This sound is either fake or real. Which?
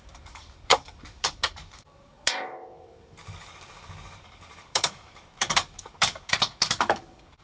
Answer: fake